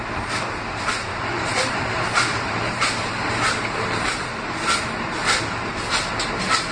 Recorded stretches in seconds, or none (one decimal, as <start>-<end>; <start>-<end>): 0.0-1.1; 4.8-5.2; 6.1-6.7